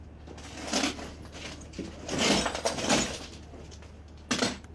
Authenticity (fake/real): real